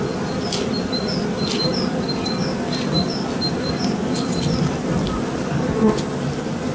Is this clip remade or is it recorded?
recorded